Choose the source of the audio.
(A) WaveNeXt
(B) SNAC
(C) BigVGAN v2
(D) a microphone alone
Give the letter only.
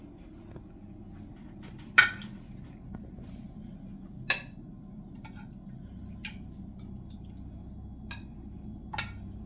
D